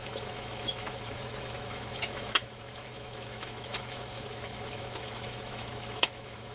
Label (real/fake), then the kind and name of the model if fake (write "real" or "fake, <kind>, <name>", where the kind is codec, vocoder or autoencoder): fake, autoencoder, DAC-VAE